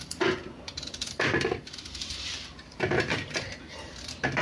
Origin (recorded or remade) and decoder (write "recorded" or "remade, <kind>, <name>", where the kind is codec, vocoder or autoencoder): remade, vocoder, BigVGAN v2